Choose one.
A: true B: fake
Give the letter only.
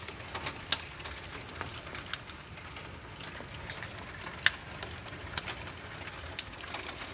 A